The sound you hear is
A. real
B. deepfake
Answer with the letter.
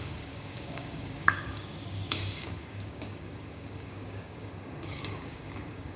B